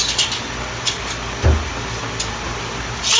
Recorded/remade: recorded